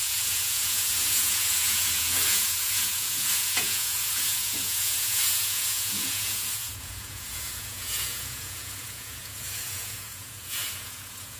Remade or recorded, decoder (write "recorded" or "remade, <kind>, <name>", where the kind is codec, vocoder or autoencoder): remade, vocoder, Vocos